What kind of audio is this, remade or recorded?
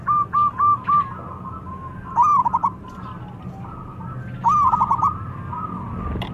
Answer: recorded